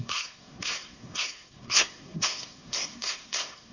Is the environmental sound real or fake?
fake